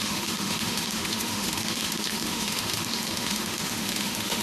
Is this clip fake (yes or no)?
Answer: yes